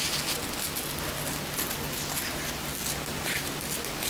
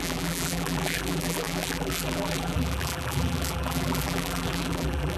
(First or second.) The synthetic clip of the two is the second